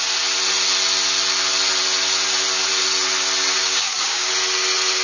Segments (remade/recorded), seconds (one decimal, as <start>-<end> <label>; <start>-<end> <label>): 0.0-3.6 recorded; 3.6-4.3 remade; 4.3-5.0 recorded